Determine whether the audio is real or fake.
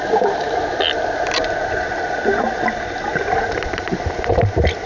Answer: fake